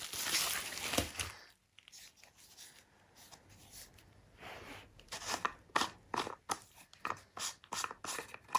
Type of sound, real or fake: real